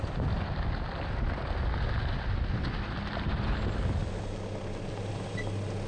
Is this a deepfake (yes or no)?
no